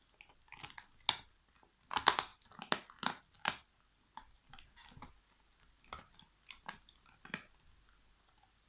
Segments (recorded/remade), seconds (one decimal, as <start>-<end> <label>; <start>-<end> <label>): 0.0-8.7 recorded